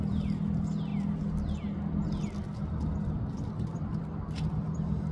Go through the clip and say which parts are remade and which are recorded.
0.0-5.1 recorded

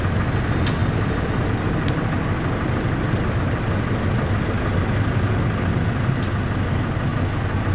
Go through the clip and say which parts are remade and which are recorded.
0.0-7.7 recorded

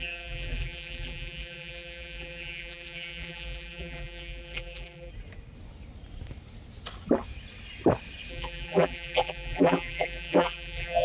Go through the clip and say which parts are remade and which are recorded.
0.0-5.1 remade; 5.1-8.3 recorded; 8.3-11.0 remade

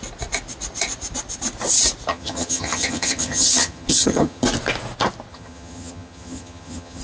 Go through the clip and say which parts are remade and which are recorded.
0.0-2.1 recorded; 2.1-4.4 remade; 4.4-5.3 recorded; 5.3-7.0 remade

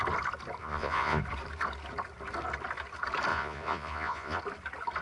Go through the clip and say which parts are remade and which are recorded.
0.0-0.6 recorded; 0.6-1.2 remade; 1.2-3.3 recorded; 3.3-4.4 remade; 4.4-5.0 recorded